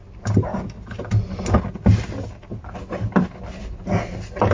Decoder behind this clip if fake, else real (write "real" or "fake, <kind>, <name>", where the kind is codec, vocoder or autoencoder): real